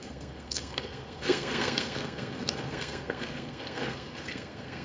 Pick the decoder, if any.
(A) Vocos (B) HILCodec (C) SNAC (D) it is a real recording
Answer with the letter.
C